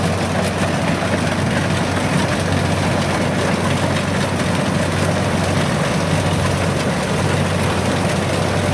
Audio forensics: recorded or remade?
recorded